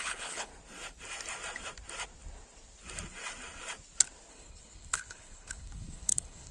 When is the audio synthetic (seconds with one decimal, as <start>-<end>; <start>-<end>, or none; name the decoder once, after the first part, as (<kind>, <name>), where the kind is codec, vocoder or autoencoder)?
0.0-0.5 (codec, HILCodec); 4.3-6.5